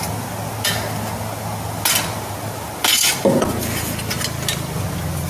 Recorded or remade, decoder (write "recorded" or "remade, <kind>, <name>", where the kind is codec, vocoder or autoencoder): recorded